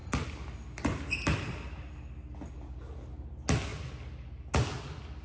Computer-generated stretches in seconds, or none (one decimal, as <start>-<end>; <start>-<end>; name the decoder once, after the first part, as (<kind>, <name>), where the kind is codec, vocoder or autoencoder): none